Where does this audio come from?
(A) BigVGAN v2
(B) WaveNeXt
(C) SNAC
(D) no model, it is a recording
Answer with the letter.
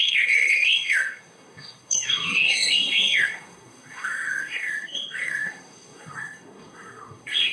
C